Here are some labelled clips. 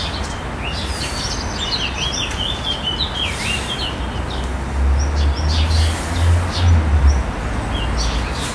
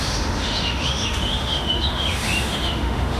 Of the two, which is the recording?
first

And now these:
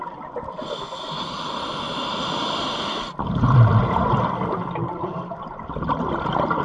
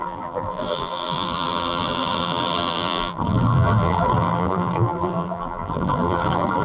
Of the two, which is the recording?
first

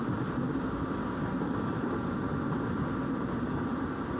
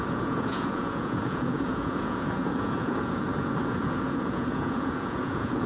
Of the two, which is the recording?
first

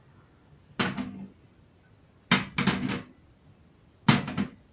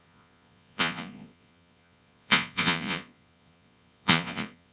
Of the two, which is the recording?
first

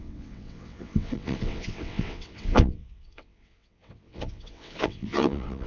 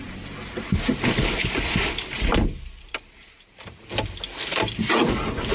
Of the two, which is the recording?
second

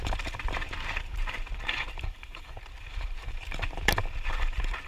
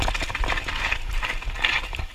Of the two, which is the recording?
second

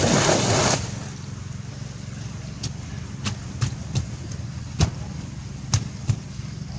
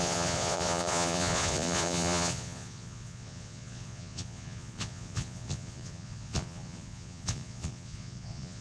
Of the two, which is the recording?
first